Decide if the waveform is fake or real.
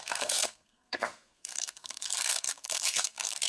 fake